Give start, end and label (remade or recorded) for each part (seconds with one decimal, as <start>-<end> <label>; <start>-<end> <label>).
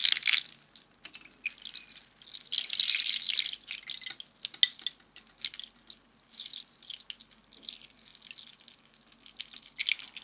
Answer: 0.0-10.2 recorded